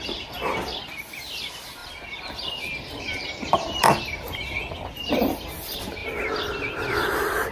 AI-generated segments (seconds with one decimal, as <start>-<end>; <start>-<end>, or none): 4.4-5.3